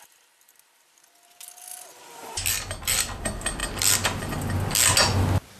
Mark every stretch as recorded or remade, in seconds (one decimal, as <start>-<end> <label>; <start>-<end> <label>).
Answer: 0.0-1.7 recorded; 1.7-2.5 remade; 2.5-3.6 recorded; 3.6-4.2 remade; 4.2-5.6 recorded